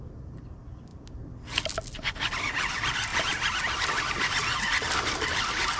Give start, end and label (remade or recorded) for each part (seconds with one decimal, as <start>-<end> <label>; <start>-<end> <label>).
0.0-5.8 recorded

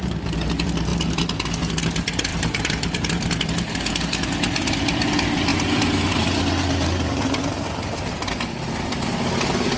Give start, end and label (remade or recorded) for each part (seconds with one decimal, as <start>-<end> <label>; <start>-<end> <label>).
0.0-2.3 recorded; 2.3-3.3 remade; 3.3-5.5 recorded; 5.5-6.4 remade; 6.4-9.8 recorded

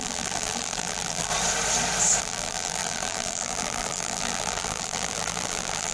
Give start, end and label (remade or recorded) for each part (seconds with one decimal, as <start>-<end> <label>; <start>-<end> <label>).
0.0-1.3 remade; 1.3-2.2 recorded; 2.2-5.9 remade